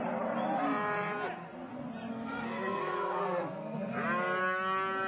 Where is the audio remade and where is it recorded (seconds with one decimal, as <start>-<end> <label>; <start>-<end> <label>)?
0.0-2.1 recorded; 2.1-3.9 remade; 3.9-5.1 recorded

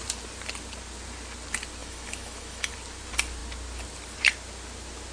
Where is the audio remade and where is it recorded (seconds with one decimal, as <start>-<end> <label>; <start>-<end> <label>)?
0.0-1.8 recorded; 1.8-2.7 remade; 2.7-5.1 recorded

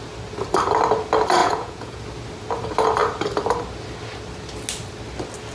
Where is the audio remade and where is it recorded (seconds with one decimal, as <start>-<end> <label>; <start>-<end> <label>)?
0.0-1.4 recorded; 1.4-2.0 remade; 2.0-5.5 recorded

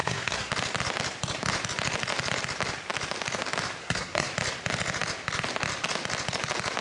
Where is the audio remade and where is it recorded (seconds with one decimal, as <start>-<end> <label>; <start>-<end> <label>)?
0.0-0.5 remade; 0.5-3.8 recorded; 3.8-4.3 remade; 4.3-6.8 recorded

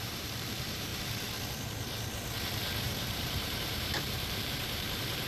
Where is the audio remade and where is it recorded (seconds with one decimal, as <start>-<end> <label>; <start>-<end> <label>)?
0.0-0.9 remade; 0.9-2.8 recorded; 2.8-5.3 remade

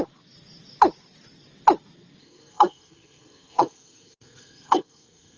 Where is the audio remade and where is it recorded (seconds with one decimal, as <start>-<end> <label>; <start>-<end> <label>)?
0.0-2.2 recorded; 2.2-5.4 remade

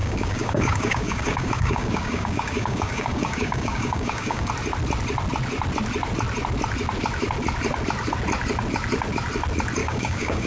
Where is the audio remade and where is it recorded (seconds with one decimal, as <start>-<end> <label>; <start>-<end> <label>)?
0.0-4.5 remade; 4.5-9.8 recorded; 9.8-10.5 remade